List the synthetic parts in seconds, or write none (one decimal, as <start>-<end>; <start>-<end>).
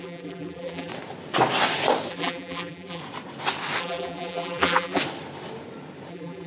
0.0-0.9; 2.1-3.0; 3.8-5.0; 6.1-6.5